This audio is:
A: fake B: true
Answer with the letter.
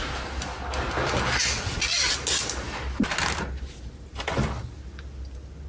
B